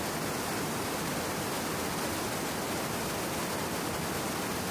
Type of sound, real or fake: real